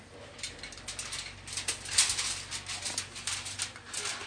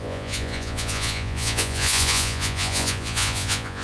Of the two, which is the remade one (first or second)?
second